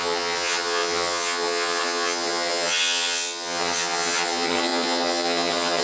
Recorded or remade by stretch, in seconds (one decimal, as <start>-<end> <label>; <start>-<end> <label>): 0.0-5.8 remade